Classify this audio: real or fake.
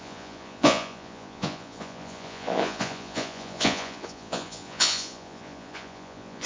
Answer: fake